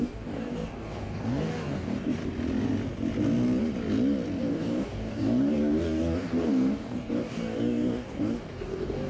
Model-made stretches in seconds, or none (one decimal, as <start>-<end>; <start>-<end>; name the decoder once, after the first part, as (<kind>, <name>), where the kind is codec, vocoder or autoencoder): 0.0-2.2 (codec, DAC); 4.4-9.1